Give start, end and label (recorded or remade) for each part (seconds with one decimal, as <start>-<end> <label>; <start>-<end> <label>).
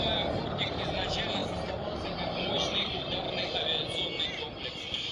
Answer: 0.0-5.1 recorded